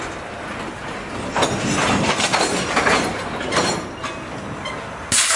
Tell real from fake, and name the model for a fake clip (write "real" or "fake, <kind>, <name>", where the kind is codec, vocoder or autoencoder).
real